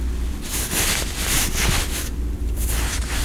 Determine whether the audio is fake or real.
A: real